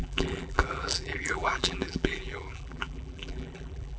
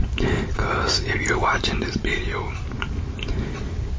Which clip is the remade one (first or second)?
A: first